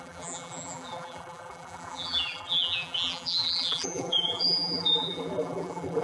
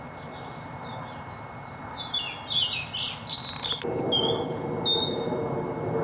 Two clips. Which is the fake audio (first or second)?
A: first